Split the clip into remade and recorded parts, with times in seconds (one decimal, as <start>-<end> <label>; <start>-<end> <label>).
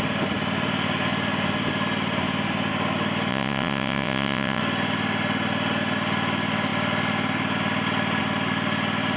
0.0-3.3 recorded; 3.3-4.6 remade; 4.6-9.2 recorded